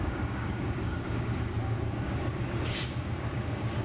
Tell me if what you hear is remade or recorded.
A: remade